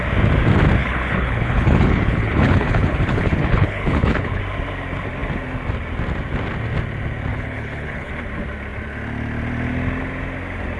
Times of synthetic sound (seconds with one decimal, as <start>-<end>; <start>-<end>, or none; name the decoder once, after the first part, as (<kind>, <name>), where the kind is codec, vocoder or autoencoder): 0.8-4.4 (codec, HILCodec); 7.3-8.1